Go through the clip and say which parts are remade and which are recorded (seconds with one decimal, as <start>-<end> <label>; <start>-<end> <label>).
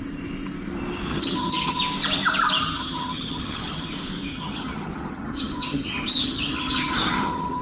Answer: 0.0-1.1 recorded; 1.1-1.8 remade; 1.8-2.6 recorded; 2.6-3.9 remade; 3.9-4.3 recorded; 4.3-7.6 remade